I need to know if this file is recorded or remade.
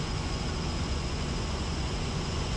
remade